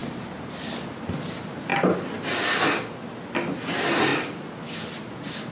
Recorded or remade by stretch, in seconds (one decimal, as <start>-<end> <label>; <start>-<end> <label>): 0.0-5.5 recorded